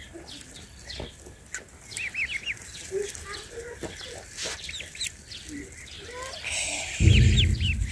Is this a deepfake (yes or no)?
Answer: no